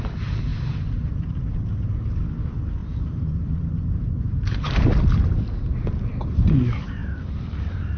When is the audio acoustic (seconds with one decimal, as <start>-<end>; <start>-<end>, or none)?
0.0-0.5; 2.3-2.8; 5.1-7.0; 7.6-8.0